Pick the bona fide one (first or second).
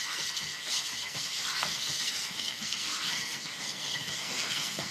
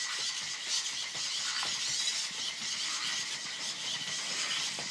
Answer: second